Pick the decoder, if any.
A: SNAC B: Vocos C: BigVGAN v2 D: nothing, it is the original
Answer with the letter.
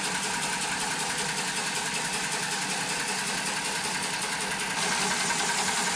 D